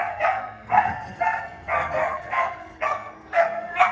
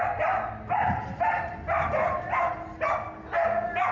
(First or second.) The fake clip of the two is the first